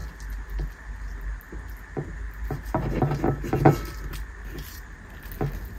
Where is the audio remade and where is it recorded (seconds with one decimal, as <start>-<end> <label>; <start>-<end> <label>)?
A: 0.0-5.8 recorded